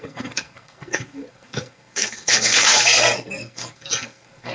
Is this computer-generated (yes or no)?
yes